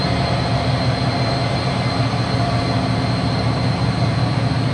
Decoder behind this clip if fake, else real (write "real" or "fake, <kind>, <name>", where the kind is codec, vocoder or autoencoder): real